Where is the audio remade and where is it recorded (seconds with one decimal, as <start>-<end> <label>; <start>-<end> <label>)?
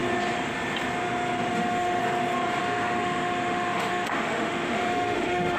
0.0-1.5 recorded; 1.5-2.0 remade; 2.0-2.6 recorded; 2.6-5.6 remade